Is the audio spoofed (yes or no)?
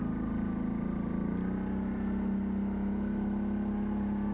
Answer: no